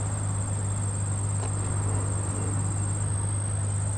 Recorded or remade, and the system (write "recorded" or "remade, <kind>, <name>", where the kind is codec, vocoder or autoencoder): recorded